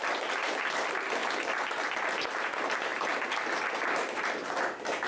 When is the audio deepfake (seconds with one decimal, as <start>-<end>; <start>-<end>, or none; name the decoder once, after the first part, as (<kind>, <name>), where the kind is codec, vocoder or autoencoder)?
none